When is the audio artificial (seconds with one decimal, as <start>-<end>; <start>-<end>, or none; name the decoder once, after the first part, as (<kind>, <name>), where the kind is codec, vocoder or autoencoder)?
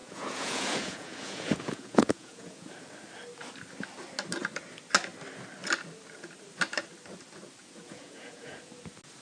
0.0-2.7 (vocoder, Vocos); 7.6-8.6